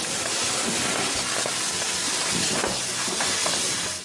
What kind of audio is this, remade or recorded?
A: recorded